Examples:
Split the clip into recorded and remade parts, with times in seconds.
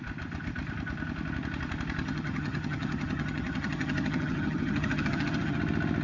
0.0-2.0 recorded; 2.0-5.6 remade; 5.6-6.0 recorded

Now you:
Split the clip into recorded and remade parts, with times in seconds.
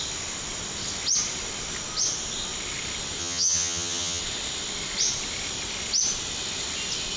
0.0-3.2 recorded; 3.2-4.2 remade; 4.2-7.2 recorded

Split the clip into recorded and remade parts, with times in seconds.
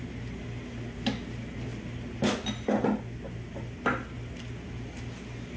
0.0-5.6 recorded